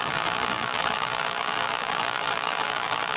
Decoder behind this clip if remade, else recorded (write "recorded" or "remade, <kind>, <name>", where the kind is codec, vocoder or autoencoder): remade, vocoder, BigVGAN v2